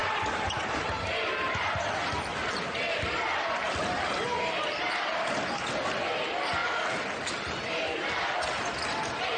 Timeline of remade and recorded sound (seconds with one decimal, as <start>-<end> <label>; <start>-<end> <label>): 0.0-1.0 remade; 1.0-9.4 recorded